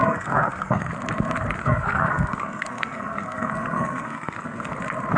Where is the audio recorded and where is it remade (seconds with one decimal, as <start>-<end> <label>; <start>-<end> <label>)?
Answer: 0.0-0.9 remade; 0.9-1.6 recorded; 1.6-4.7 remade; 4.7-5.2 recorded